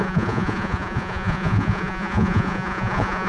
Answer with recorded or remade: remade